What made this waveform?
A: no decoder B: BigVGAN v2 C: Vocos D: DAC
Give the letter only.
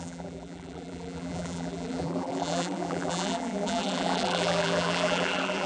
B